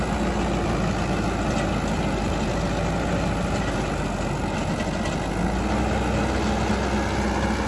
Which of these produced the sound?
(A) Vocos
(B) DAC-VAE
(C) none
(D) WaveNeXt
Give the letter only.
C